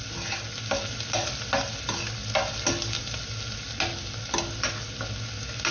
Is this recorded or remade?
recorded